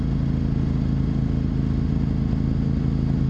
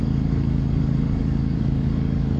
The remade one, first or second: second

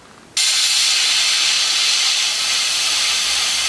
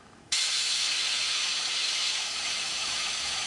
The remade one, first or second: second